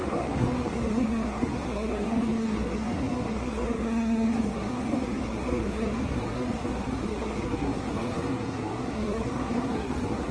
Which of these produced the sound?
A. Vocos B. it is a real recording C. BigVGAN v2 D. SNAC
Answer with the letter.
D